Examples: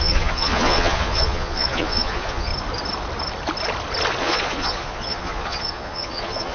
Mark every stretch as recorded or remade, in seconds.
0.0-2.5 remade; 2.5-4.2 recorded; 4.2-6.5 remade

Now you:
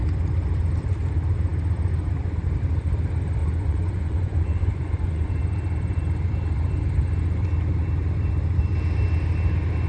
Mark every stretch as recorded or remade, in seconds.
0.0-3.4 recorded; 3.4-5.3 remade; 5.3-9.9 recorded

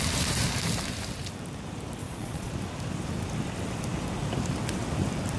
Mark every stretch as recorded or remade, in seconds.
0.0-2.0 recorded; 2.0-2.5 remade; 2.5-5.4 recorded

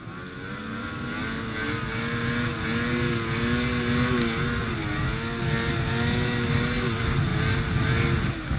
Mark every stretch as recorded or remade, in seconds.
0.0-8.6 recorded

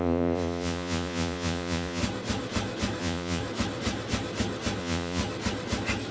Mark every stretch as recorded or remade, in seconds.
0.0-2.0 remade; 2.0-3.0 recorded; 3.0-3.4 remade; 3.4-4.8 recorded; 4.8-5.2 remade; 5.2-6.1 recorded